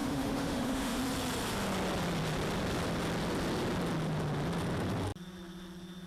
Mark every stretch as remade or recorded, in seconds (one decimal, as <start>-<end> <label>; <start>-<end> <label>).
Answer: 0.0-1.0 remade; 1.0-6.1 recorded